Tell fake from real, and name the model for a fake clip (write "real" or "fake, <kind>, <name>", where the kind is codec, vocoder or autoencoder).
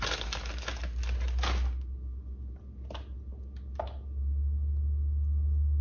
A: real